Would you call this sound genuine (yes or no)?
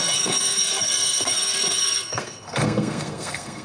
no